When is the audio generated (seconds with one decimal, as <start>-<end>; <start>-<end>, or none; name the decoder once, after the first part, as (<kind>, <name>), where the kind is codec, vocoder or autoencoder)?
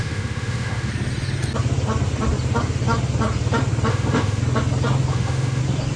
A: 0.0-0.9 (autoencoder, DAC-VAE); 3.9-4.4; 5.1-5.6